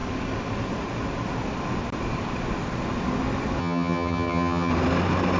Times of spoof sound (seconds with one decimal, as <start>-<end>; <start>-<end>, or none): 3.6-4.7